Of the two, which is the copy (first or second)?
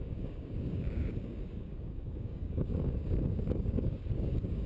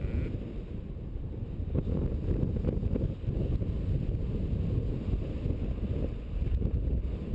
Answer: first